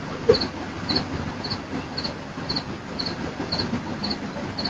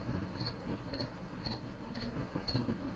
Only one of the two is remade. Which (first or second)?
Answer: second